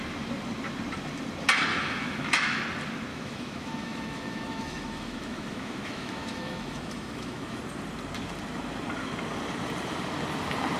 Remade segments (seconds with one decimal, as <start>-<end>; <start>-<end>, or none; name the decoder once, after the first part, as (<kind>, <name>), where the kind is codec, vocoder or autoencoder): 1.7-2.6 (autoencoder, DAC-VAE); 3.1-7.6